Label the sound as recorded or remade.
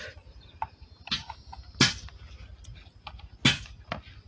recorded